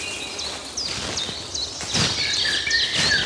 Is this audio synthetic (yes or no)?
no